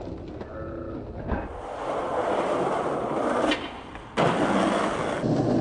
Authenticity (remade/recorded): recorded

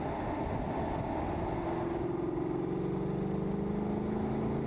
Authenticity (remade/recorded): recorded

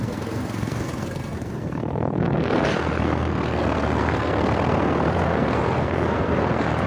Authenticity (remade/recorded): remade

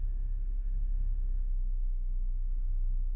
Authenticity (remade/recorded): remade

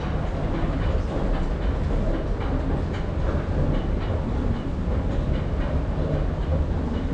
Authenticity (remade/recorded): recorded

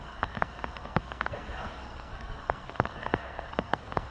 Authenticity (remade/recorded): remade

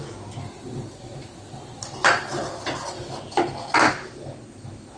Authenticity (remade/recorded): recorded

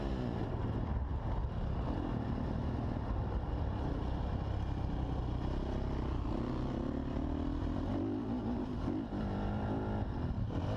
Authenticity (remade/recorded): recorded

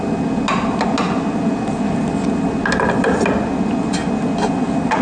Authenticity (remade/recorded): recorded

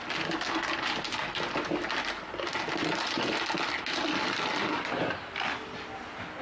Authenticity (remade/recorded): recorded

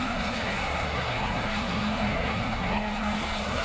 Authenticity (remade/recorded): remade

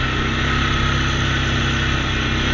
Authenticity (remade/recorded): recorded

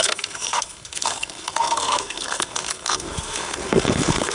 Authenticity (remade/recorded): remade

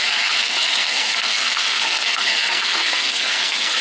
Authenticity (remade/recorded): remade